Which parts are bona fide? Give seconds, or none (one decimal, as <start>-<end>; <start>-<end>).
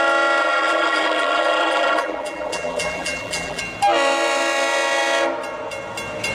0.0-0.4; 3.6-6.3